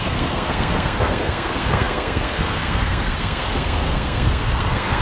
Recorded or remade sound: remade